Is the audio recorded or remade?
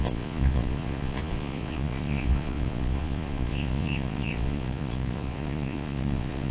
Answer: remade